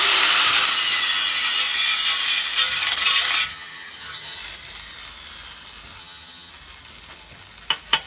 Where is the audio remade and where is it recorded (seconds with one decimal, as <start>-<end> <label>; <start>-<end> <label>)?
0.0-3.5 recorded; 3.5-4.4 remade; 4.4-6.0 recorded; 6.0-6.5 remade; 6.5-8.1 recorded